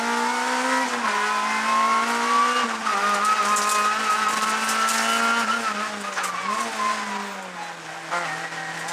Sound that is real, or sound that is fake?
real